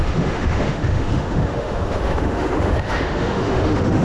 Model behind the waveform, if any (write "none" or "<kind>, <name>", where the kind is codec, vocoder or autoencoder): autoencoder, DAC-VAE